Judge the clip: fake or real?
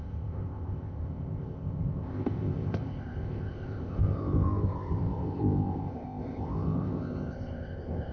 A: fake